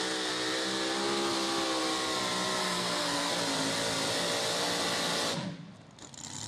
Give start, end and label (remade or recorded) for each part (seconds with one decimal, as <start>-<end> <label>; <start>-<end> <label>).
0.0-2.6 recorded; 2.6-3.3 remade; 3.3-6.5 recorded

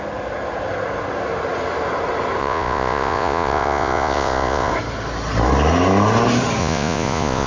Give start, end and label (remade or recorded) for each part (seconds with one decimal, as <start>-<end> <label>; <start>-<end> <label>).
0.0-2.4 recorded; 2.4-4.7 remade; 4.7-6.6 recorded; 6.6-7.5 remade